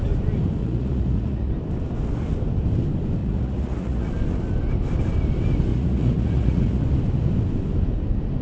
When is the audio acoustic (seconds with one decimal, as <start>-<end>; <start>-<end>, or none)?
0.0-0.6; 1.5-3.2; 4.1-5.7; 6.8-8.4